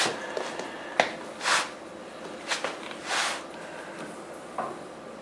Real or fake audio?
real